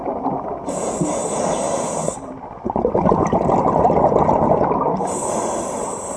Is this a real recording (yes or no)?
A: yes